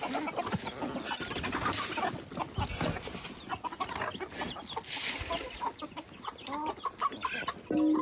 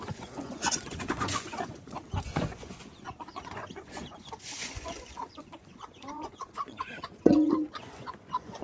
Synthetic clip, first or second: second